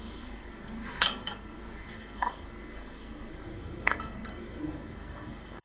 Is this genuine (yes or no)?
no